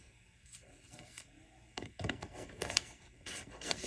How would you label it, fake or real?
fake